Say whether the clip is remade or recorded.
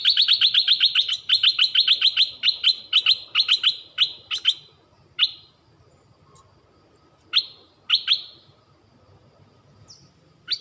recorded